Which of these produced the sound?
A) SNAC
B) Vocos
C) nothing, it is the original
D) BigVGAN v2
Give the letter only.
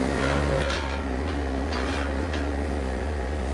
B